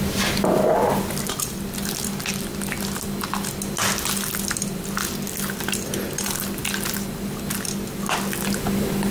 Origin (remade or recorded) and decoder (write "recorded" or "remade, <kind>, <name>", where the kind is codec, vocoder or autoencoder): recorded